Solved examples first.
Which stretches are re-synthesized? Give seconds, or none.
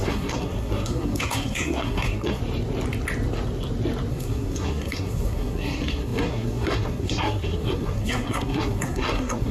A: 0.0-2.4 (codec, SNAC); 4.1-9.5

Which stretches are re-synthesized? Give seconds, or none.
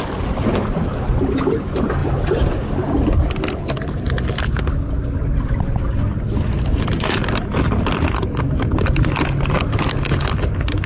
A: none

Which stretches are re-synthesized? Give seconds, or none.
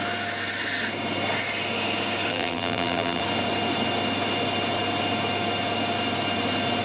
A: 2.3-3.2 (vocoder, BigVGAN v2)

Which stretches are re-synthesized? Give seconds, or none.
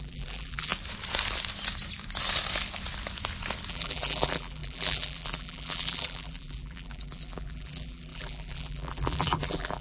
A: 0.0-0.7 (vocoder, BigVGAN v2); 3.7-9.8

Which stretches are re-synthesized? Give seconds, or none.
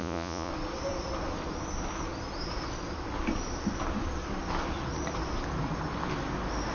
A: 0.0-0.5 (vocoder, Vocos)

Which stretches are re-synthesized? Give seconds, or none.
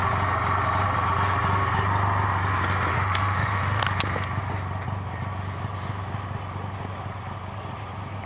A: 2.9-3.8 (autoencoder, DAC-VAE)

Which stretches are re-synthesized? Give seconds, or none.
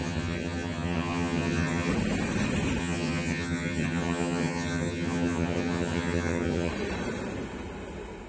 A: 0.0-1.9 (vocoder, HiFi-GAN); 2.8-6.7